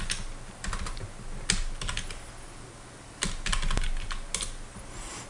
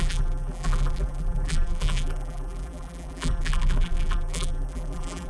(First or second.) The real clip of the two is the first